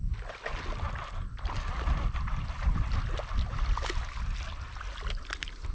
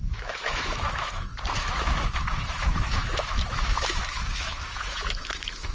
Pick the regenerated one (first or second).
second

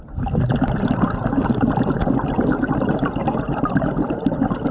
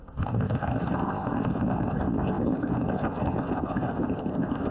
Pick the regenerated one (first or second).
second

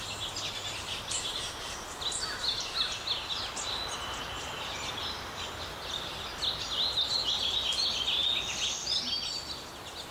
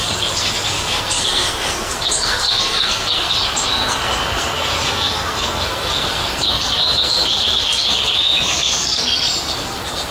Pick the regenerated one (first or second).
second